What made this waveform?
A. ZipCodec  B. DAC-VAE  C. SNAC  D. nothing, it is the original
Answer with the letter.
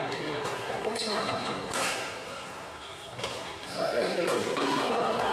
C